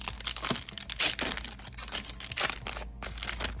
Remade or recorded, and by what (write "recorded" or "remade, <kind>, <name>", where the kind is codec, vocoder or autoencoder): recorded